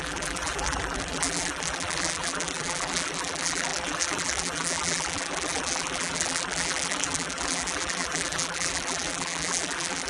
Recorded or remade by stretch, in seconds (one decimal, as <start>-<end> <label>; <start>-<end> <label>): 0.0-10.1 remade